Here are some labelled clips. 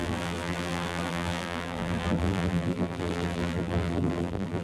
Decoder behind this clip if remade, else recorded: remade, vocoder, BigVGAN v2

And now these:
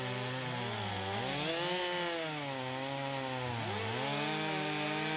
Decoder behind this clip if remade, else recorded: recorded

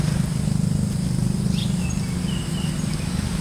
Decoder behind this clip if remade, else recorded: recorded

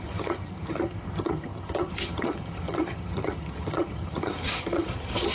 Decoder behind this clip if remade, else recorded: remade, vocoder, HiFi-GAN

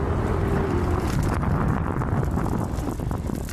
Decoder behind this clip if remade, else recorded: recorded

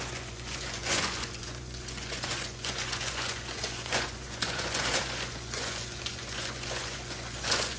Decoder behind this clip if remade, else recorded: remade, vocoder, Vocos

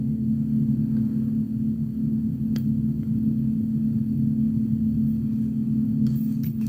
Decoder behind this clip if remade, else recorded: remade, codec, DAC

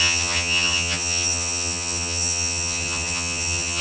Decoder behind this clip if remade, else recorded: remade, vocoder, HiFi-GAN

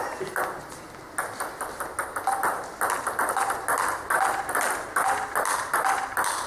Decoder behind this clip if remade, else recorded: recorded